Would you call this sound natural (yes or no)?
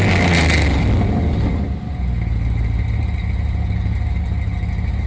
yes